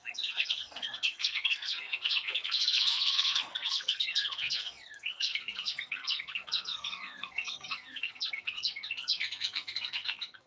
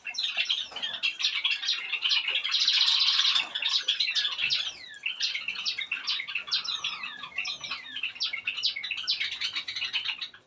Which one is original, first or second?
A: second